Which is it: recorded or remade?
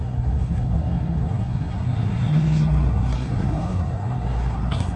remade